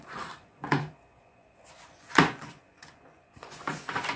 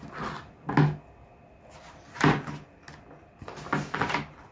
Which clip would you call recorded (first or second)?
second